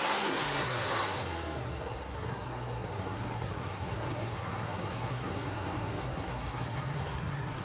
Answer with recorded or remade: remade